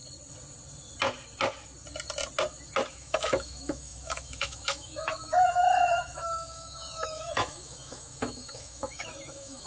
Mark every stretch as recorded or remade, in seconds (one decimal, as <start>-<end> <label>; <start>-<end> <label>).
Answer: 0.0-2.9 recorded; 2.9-9.7 remade